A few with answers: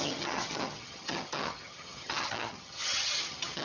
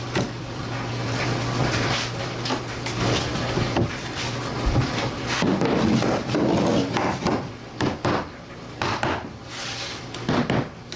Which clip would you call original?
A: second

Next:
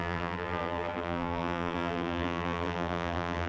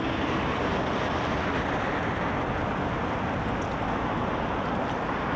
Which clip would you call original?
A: second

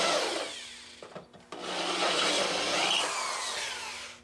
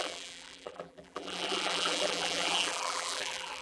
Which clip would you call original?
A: first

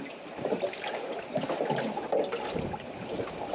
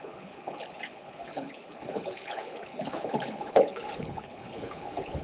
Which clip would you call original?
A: first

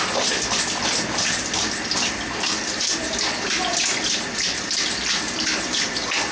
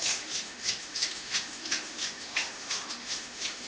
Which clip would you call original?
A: first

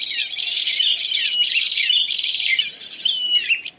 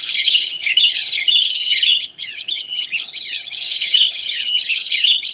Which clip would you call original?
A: first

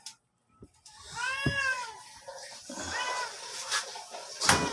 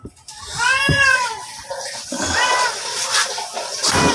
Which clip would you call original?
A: first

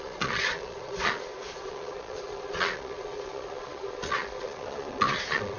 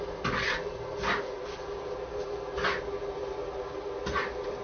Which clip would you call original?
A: second